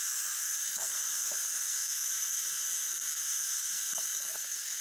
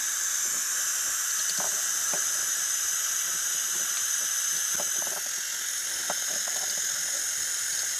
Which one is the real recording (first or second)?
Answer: second